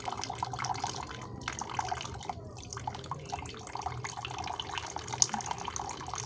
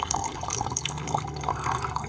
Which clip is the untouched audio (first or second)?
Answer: first